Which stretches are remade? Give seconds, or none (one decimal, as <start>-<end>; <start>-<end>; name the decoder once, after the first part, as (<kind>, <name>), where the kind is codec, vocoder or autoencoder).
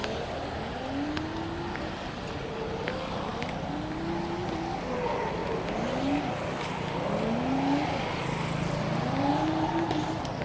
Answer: none